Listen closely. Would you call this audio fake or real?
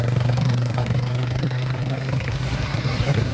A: fake